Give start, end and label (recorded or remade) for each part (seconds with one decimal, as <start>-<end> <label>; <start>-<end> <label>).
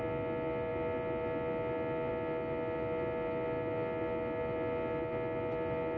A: 0.0-6.0 recorded